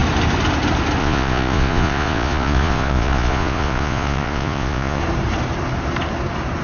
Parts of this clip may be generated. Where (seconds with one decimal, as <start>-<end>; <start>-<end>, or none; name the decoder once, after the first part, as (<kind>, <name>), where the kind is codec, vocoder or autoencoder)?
1.0-5.0 (vocoder, Vocos)